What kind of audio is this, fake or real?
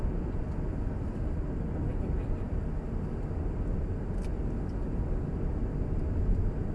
real